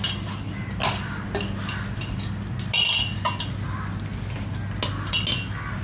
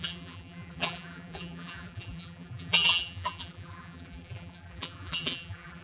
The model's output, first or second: second